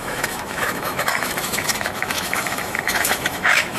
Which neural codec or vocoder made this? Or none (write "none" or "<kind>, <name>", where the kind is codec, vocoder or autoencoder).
autoencoder, DAC-VAE